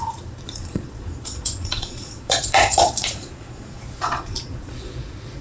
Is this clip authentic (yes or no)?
no